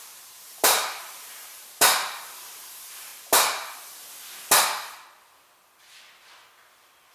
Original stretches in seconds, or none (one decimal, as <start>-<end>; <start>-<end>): 3.1-7.1